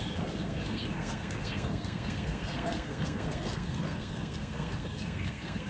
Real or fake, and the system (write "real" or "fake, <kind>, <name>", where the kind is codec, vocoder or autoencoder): fake, codec, SNAC